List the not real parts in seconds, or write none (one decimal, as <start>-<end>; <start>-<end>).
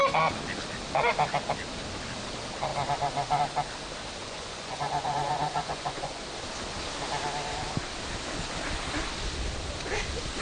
4.2-6.2